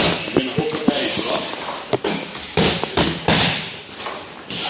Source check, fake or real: real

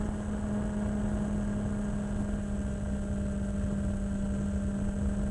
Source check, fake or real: real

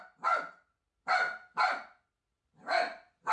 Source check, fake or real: real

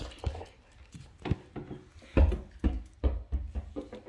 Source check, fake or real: real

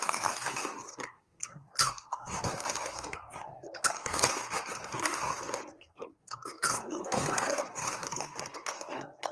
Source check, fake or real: fake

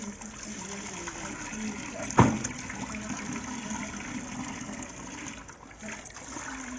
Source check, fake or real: real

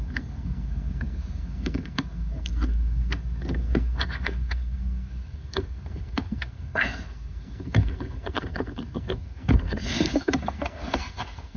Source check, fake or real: fake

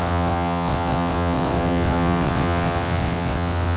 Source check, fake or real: fake